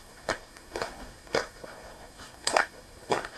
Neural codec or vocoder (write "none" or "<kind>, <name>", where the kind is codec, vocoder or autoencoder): codec, SNAC